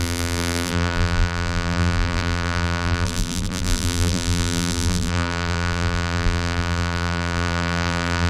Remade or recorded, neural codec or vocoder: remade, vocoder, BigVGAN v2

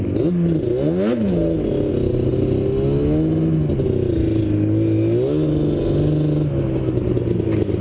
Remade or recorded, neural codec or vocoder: recorded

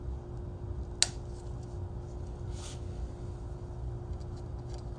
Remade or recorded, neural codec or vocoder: recorded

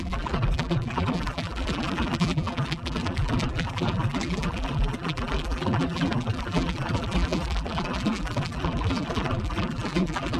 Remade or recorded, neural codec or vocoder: remade, vocoder, BigVGAN v2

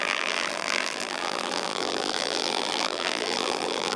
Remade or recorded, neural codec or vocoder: remade, vocoder, BigVGAN v2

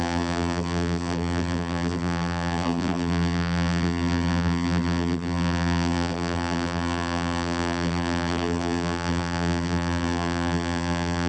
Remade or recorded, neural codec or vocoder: remade, vocoder, BigVGAN v2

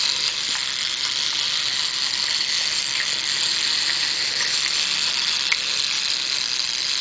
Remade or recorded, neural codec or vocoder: remade, vocoder, BigVGAN v2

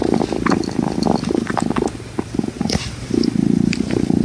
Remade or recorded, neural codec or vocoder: recorded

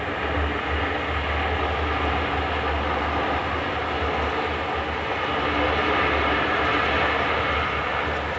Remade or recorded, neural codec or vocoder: recorded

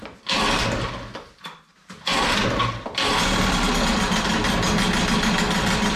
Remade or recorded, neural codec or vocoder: recorded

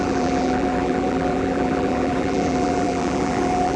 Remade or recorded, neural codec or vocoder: remade, vocoder, BigVGAN v2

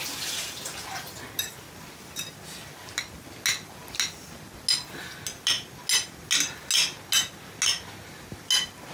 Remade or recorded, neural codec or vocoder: recorded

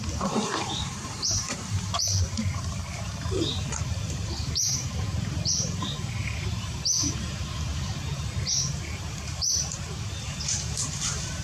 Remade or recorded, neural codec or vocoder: remade, vocoder, BigVGAN v2